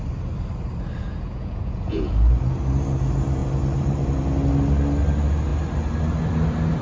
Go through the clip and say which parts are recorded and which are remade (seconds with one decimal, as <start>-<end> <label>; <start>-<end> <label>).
0.0-1.0 recorded; 1.0-2.1 remade; 2.1-6.8 recorded